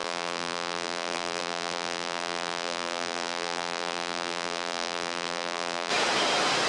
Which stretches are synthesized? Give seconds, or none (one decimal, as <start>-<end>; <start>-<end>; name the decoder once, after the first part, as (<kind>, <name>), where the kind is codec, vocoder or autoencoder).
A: 0.0-5.9 (vocoder, BigVGAN v2)